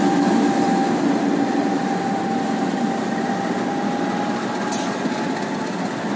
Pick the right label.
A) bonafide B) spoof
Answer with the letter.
A